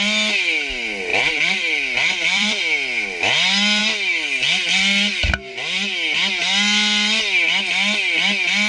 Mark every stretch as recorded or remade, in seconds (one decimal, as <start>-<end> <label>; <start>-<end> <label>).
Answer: 0.0-1.1 recorded; 1.1-2.6 remade; 2.6-8.7 recorded

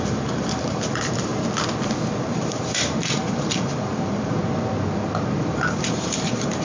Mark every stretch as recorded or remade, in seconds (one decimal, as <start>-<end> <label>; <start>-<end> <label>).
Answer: 0.0-1.3 remade; 1.3-2.2 recorded; 2.2-4.4 remade; 4.4-5.4 recorded; 5.4-6.6 remade

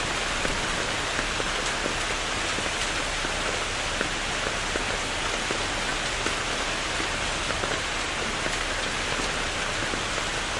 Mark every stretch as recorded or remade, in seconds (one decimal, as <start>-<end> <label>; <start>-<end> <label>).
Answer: 0.0-10.6 recorded

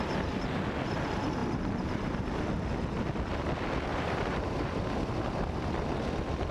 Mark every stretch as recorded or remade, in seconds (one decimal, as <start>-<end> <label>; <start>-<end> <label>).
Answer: 0.0-3.9 recorded; 3.9-4.8 remade; 4.8-6.5 recorded

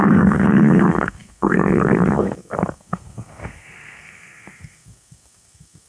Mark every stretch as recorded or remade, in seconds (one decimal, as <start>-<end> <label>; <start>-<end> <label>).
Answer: 0.0-5.9 remade

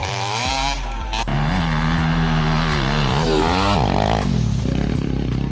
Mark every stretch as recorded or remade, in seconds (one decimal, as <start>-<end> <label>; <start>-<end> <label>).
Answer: 0.0-0.5 remade; 0.5-5.5 recorded

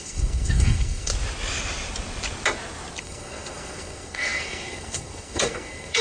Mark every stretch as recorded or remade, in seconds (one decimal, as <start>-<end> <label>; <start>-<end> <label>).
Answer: 0.0-1.1 remade; 1.1-3.0 recorded; 3.0-6.0 remade

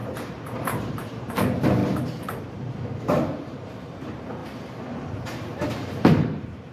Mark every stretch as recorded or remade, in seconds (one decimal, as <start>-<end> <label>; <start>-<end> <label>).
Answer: 0.0-1.8 remade; 1.8-2.5 recorded; 2.5-4.4 remade; 4.4-5.1 recorded; 5.1-6.7 remade